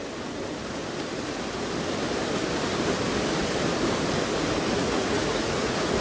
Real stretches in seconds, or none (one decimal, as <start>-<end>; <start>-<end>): 0.0-4.8